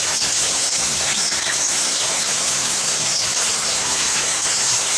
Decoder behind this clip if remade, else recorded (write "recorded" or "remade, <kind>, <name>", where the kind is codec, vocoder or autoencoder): remade, codec, SNAC